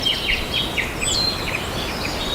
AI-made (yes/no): no